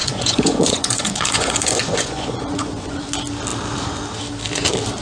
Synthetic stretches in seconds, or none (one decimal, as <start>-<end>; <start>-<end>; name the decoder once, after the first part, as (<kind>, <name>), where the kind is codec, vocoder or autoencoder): 0.0-3.0 (vocoder, Vocos)